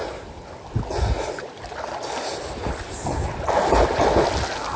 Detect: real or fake real